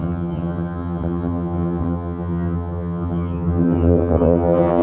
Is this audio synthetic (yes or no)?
yes